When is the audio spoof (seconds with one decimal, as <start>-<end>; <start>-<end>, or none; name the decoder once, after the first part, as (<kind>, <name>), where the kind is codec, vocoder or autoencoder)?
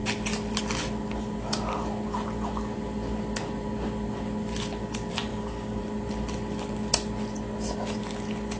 5.3-5.8 (codec, DAC)